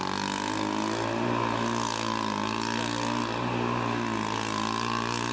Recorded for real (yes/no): yes